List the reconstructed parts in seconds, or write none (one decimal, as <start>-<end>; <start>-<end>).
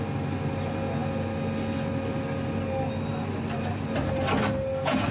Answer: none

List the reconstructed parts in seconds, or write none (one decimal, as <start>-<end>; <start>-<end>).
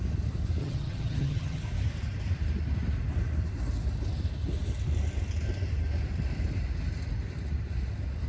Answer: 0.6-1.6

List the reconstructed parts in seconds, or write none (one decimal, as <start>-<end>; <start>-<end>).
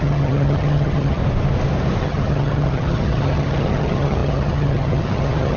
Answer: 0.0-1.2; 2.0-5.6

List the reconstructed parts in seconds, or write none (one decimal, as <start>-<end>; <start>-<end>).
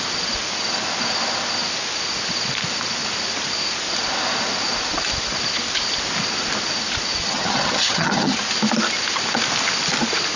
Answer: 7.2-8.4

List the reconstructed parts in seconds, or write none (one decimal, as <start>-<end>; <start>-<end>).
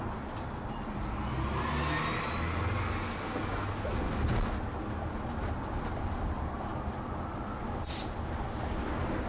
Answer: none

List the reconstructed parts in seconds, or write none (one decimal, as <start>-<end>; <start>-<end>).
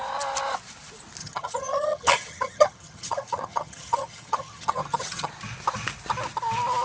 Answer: 1.2-5.3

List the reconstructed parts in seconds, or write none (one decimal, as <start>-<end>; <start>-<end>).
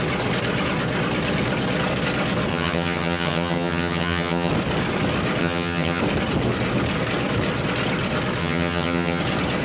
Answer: 2.5-4.5; 5.4-6.0; 8.4-9.2